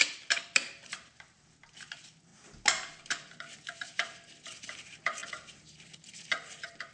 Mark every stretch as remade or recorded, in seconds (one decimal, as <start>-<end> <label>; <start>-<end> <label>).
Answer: 0.0-2.3 remade; 2.3-3.0 recorded; 3.0-6.9 remade